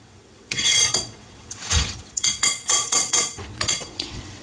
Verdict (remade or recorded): remade